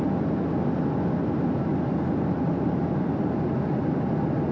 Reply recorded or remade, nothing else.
recorded